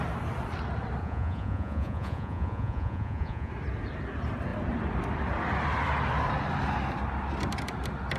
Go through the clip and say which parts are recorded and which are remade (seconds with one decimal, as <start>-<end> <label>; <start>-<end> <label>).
0.0-1.0 recorded; 1.0-3.5 remade; 3.5-8.2 recorded